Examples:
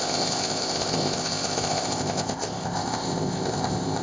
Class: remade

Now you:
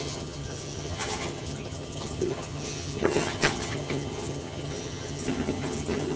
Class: remade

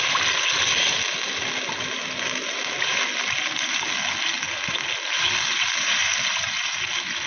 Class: recorded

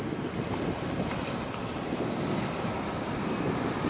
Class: recorded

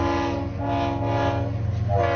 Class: recorded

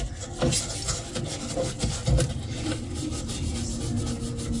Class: recorded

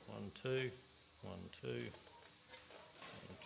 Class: recorded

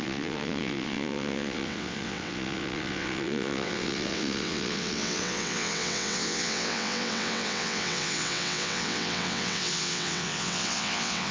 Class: remade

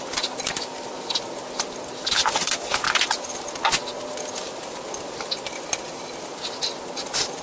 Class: recorded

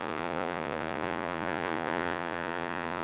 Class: remade